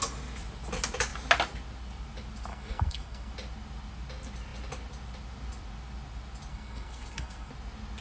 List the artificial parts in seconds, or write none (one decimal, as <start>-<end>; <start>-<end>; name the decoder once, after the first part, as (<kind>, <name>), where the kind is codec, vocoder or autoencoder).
2.5-3.3 (codec, SNAC); 6.5-7.5